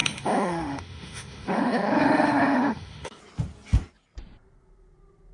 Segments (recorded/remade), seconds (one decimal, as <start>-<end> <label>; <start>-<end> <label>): 0.0-3.2 remade; 3.2-5.3 recorded